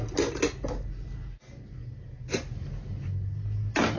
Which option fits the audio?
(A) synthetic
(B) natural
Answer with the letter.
B